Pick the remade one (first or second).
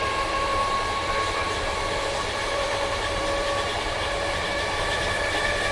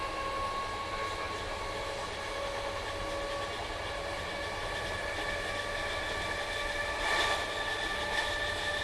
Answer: first